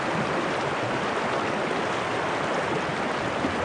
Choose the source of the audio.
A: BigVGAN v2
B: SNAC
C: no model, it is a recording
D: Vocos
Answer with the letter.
C